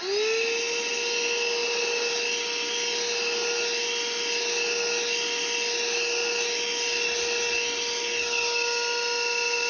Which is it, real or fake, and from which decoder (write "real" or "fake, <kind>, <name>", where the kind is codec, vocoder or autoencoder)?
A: real